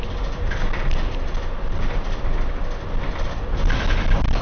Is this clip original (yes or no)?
yes